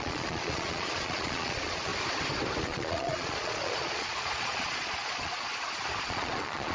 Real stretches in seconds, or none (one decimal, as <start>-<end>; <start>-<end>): 1.9-2.6; 5.5-6.0